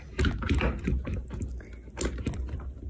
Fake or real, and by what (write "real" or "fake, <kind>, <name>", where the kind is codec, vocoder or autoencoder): real